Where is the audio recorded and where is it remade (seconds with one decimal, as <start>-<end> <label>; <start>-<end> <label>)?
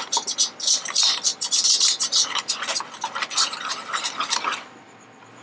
0.0-5.4 recorded